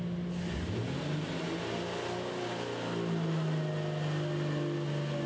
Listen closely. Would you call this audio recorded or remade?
recorded